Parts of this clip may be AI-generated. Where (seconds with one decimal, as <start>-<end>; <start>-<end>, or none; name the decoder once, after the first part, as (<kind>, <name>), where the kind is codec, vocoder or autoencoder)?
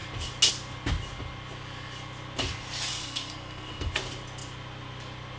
2.9-3.9 (codec, SNAC)